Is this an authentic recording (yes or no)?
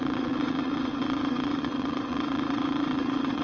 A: no